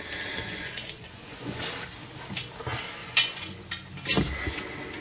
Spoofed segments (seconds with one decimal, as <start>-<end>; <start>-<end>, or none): 0.4-1.6; 3.0-3.7